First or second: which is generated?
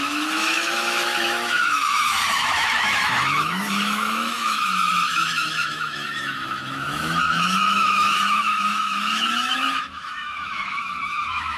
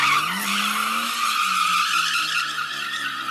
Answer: first